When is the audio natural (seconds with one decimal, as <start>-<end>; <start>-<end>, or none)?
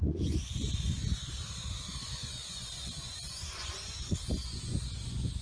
0.9-1.9